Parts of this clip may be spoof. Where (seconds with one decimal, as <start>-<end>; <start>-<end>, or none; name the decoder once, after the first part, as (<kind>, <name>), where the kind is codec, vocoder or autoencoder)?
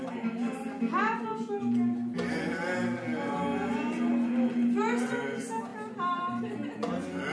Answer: none